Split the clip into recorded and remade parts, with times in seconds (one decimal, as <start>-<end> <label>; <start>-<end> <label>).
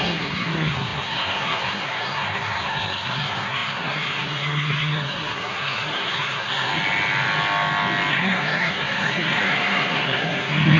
0.0-6.7 remade; 6.7-8.1 recorded; 8.1-10.8 remade